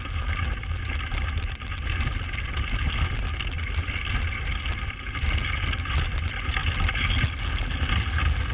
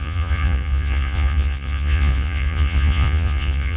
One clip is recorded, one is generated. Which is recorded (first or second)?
first